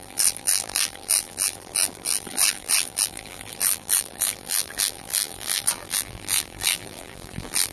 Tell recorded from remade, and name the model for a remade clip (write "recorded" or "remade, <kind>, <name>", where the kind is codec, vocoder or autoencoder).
remade, vocoder, BigVGAN v2